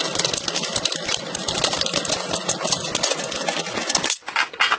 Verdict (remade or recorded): recorded